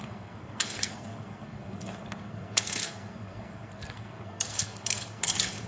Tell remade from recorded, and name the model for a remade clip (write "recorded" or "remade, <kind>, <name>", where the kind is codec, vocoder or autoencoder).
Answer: remade, codec, SNAC